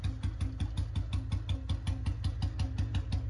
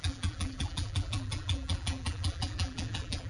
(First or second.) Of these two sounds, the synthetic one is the second